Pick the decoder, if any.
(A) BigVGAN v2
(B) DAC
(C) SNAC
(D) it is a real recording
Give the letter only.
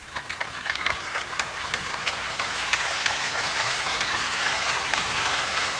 C